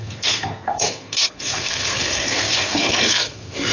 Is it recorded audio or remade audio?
remade